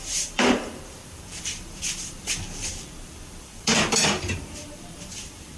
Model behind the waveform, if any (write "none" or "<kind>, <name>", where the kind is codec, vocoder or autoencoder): vocoder, BigVGAN v2